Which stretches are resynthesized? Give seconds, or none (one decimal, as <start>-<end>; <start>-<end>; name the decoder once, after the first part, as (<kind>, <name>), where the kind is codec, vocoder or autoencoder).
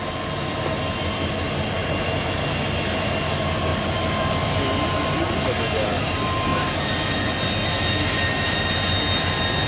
none